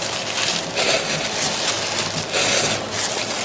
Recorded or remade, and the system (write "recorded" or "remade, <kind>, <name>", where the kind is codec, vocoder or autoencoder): recorded